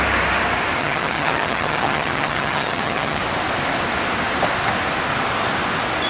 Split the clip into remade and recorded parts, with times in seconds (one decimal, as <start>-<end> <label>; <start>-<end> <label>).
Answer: 0.0-0.8 recorded; 0.8-3.2 remade; 3.2-6.1 recorded